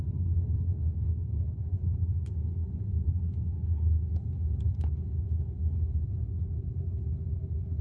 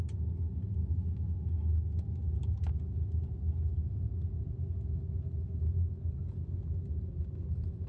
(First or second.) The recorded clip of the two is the second